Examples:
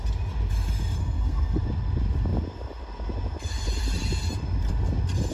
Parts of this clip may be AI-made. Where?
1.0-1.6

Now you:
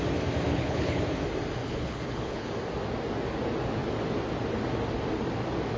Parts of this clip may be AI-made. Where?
0.5-1.0; 1.6-2.5

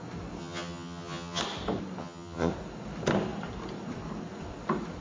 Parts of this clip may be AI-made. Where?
0.4-1.4; 2.0-2.5

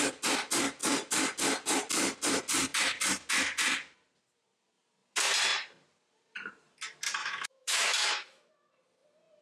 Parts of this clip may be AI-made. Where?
7.2-8.5

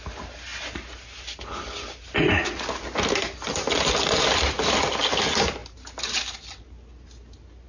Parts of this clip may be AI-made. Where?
none

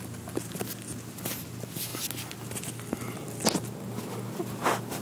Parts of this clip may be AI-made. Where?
none